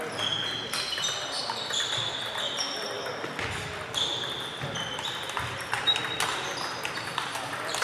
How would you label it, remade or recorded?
recorded